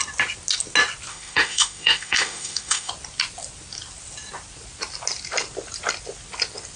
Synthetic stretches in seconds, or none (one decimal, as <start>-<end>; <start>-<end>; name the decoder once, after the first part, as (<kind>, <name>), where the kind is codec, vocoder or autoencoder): 1.1-2.9 (autoencoder, DAC-VAE)